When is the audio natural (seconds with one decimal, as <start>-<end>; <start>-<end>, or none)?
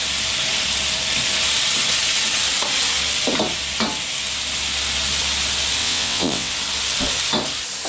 0.0-5.8; 6.5-7.9